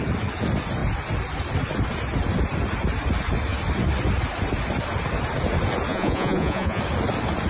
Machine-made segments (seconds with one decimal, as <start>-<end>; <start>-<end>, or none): 5.9-6.8